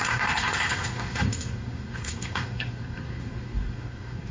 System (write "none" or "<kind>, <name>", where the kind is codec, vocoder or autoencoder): codec, SNAC